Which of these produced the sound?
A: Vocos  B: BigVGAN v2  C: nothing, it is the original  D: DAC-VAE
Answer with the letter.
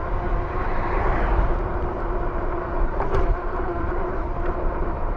B